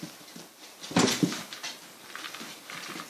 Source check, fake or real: real